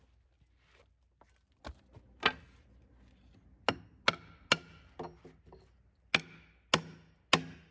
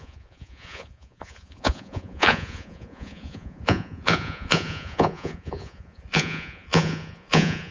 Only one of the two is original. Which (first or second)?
first